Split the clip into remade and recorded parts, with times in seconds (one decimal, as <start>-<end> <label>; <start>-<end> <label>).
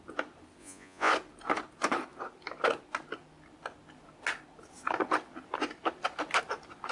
0.0-0.6 recorded; 0.6-1.1 remade; 1.1-6.9 recorded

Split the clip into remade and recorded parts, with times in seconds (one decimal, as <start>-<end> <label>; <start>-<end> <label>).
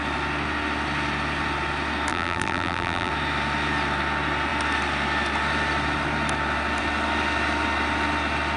0.0-2.1 recorded; 2.1-3.1 remade; 3.1-8.6 recorded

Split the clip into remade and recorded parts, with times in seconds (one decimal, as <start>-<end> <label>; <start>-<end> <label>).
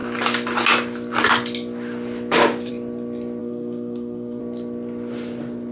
0.0-3.4 recorded; 3.4-4.4 remade; 4.4-5.7 recorded